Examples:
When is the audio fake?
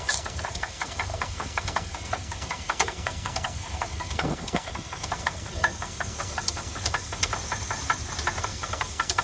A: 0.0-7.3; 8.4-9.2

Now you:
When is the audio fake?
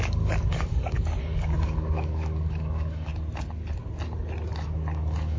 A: 0.0-3.1; 4.7-5.4